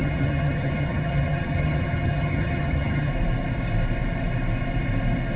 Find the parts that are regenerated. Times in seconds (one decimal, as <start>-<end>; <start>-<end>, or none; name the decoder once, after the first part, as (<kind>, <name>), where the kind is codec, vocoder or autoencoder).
0.0-3.1 (vocoder, HiFi-GAN)